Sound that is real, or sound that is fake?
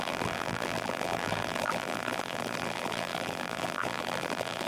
fake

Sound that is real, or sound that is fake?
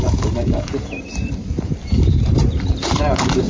fake